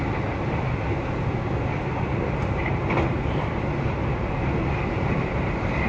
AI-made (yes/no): no